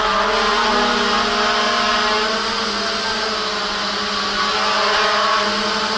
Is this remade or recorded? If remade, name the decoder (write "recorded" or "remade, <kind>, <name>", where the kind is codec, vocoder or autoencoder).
recorded